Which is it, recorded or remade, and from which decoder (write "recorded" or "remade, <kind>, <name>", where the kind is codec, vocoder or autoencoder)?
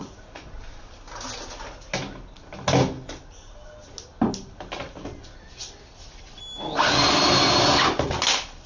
recorded